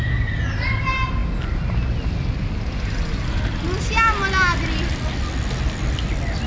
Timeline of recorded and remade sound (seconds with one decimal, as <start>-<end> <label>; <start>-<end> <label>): 0.0-6.5 recorded